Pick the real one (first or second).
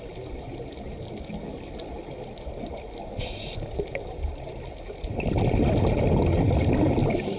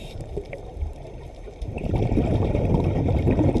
first